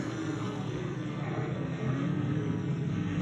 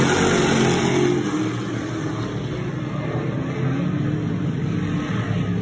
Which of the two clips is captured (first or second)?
second